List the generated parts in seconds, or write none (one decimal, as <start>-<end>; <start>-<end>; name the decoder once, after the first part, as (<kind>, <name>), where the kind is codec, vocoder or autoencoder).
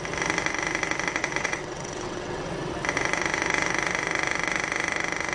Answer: 1.4-2.5 (vocoder, WaveNeXt)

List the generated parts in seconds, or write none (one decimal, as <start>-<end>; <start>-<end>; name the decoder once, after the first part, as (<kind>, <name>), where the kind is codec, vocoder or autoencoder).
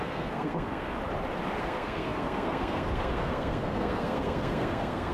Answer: 0.0-0.9 (codec, SNAC); 1.6-5.1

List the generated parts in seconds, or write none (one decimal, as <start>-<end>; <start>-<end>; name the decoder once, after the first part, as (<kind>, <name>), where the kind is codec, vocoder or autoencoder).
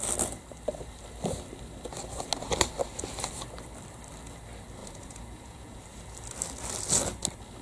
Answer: 4.8-5.8 (vocoder, Vocos)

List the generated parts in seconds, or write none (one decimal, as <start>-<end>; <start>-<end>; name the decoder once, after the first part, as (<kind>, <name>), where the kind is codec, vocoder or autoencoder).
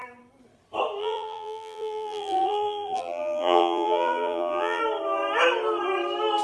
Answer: 1.0-4.8 (vocoder, BigVGAN v2)